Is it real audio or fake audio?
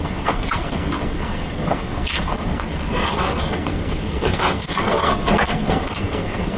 fake